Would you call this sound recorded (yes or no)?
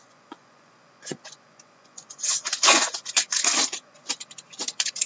no